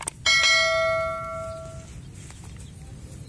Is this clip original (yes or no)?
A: yes